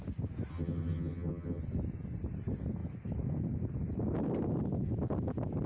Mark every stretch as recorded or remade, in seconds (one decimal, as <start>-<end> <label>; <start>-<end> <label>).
0.0-0.5 recorded; 0.5-1.6 remade; 1.6-5.7 recorded